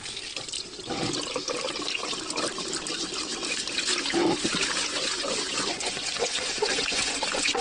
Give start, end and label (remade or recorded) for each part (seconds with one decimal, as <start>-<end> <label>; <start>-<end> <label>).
0.0-4.9 recorded; 4.9-7.6 remade